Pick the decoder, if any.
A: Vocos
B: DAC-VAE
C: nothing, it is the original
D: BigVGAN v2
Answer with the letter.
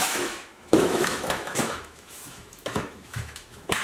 B